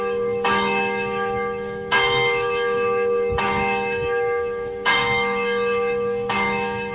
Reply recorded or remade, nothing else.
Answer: remade